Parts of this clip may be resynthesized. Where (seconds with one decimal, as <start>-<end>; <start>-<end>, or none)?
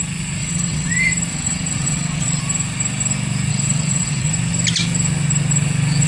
0.4-0.9; 1.3-2.4; 3.5-4.3